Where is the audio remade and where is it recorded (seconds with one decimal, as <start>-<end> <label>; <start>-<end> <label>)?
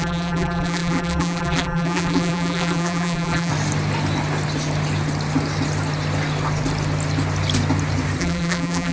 0.0-3.5 remade; 3.5-8.2 recorded; 8.2-8.9 remade